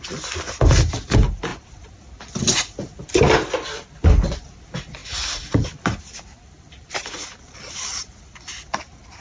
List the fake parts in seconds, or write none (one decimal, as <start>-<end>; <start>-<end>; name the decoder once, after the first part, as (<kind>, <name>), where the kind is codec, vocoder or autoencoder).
none